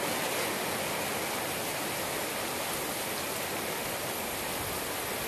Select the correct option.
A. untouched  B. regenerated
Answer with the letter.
A